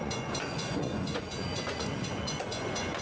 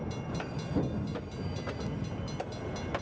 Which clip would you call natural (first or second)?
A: second